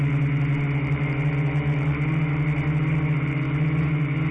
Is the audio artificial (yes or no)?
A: no